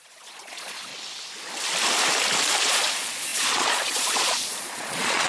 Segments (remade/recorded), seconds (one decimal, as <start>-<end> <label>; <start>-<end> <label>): 0.0-0.9 remade; 0.9-2.6 recorded; 2.6-5.3 remade